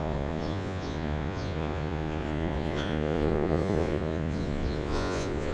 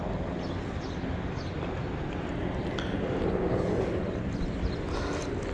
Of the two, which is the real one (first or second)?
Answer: second